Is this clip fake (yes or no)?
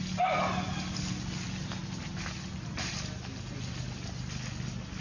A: no